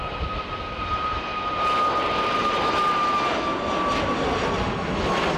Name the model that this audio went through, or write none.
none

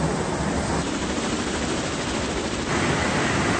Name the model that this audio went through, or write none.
vocoder, BigVGAN v2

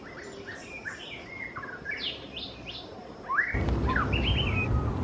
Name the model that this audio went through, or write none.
none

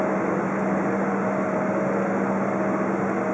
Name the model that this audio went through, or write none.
none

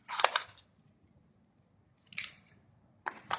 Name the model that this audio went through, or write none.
none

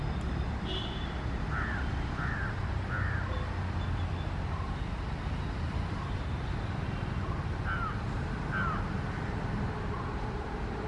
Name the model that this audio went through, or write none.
none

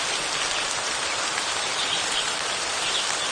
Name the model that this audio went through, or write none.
none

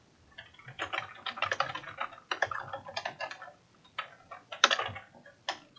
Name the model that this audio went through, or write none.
none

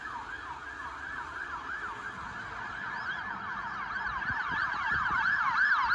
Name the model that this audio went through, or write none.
none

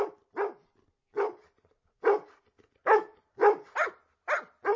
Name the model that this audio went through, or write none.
none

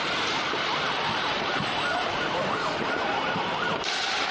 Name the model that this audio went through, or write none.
vocoder, BigVGAN v2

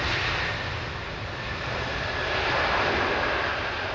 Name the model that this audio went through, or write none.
none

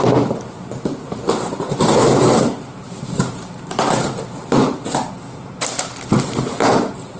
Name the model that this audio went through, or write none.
vocoder, BigVGAN v2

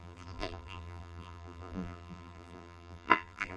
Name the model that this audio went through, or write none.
vocoder, BigVGAN v2